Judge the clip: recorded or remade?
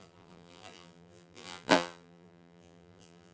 remade